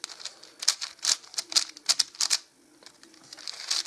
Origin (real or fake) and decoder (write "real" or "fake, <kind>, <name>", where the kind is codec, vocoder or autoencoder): real